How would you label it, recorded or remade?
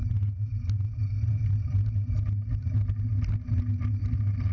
recorded